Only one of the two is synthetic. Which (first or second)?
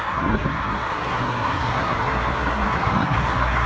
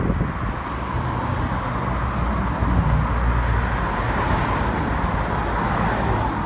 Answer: first